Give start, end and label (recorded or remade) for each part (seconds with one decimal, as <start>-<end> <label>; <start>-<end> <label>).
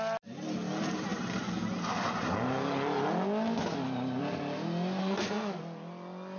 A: 0.0-5.0 recorded; 5.0-5.6 remade; 5.6-6.4 recorded